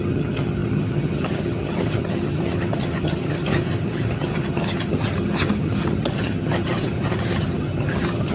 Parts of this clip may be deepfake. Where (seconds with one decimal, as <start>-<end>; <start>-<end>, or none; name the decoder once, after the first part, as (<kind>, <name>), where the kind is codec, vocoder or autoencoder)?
0.0-8.3 (vocoder, HiFi-GAN)